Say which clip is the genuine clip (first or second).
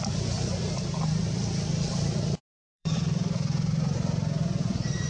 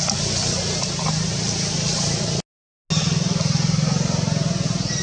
second